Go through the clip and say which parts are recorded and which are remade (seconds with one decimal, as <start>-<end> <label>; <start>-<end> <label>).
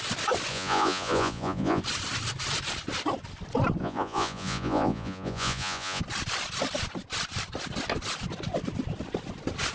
0.0-0.5 recorded; 0.5-1.8 remade; 1.8-3.8 recorded; 3.8-6.0 remade; 6.0-9.7 recorded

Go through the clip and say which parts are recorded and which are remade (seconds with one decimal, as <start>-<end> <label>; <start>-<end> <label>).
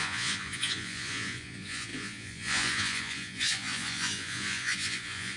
0.0-5.4 remade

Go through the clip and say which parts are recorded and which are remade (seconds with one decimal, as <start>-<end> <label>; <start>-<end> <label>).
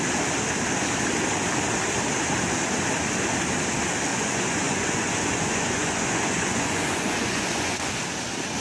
0.0-4.1 recorded; 4.1-7.9 remade; 7.9-8.6 recorded